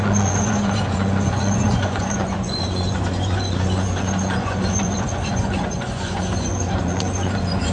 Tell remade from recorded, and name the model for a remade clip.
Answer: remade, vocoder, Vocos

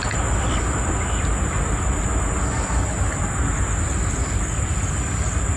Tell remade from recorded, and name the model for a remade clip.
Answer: recorded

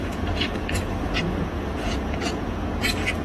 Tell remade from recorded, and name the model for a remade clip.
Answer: remade, vocoder, Vocos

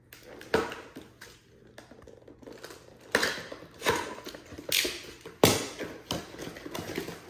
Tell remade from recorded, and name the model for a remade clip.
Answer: recorded